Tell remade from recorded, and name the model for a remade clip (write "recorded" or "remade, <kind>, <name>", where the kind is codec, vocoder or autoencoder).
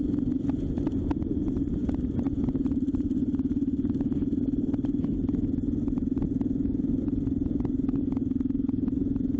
recorded